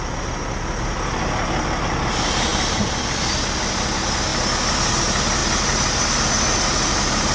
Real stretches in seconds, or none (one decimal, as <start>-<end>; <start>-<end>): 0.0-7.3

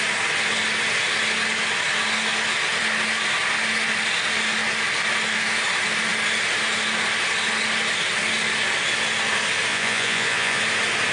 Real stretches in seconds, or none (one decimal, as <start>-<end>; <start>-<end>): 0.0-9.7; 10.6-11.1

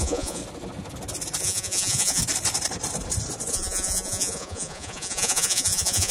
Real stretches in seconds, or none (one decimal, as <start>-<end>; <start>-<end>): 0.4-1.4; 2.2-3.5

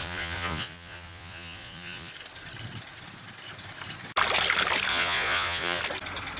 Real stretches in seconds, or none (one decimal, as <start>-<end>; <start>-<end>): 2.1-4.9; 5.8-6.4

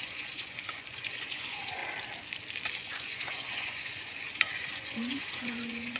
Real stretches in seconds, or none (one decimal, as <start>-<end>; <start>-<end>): 1.8-2.8

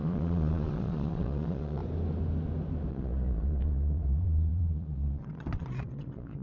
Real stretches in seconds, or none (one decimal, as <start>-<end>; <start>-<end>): 1.8-2.9

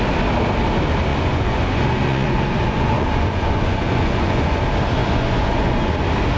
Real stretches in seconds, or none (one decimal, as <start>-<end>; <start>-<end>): 0.0-1.1; 4.6-5.0; 5.9-6.4

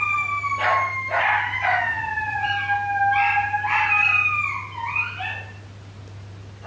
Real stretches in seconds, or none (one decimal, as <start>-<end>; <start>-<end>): 0.0-1.9; 2.5-6.7